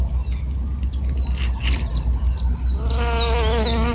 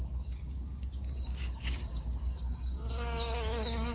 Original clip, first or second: first